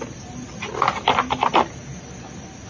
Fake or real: real